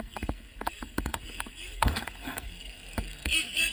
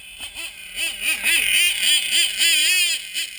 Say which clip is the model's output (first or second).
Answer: first